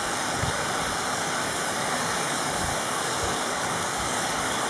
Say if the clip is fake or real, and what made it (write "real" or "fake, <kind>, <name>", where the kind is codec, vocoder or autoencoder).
fake, codec, DAC